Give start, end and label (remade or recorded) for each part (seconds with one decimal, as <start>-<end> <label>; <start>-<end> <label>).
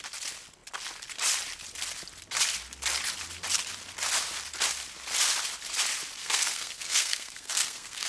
0.0-6.2 recorded; 6.2-8.1 remade